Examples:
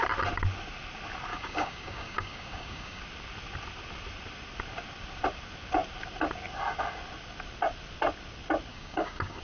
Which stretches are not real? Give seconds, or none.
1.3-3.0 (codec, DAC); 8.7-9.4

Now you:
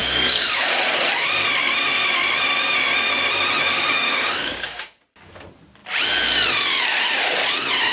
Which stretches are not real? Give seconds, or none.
0.0-0.7 (codec, DAC); 3.7-5.0

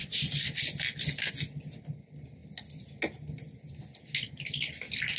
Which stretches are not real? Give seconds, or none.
none

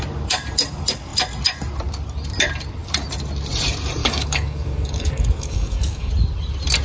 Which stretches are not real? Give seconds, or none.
4.0-6.1 (codec, DAC)